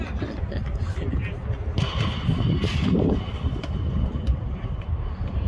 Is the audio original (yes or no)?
yes